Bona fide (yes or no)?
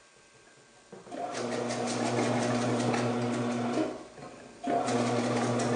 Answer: yes